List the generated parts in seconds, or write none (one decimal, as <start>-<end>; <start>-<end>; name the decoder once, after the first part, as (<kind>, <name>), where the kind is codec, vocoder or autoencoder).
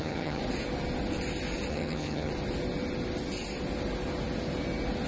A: 0.0-0.4 (vocoder, HiFi-GAN); 1.7-2.3